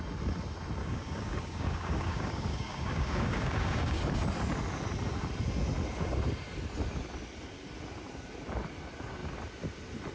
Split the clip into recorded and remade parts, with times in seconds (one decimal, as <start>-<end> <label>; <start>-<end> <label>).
0.0-0.8 recorded; 0.8-4.0 remade; 4.0-10.1 recorded